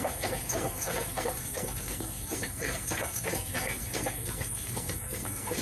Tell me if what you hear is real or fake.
fake